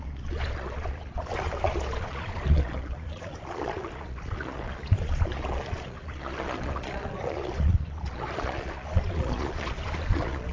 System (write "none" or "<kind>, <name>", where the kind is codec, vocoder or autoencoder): vocoder, Vocos